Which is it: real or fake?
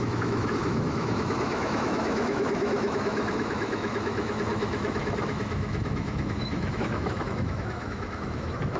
fake